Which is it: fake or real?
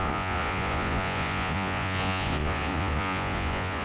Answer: fake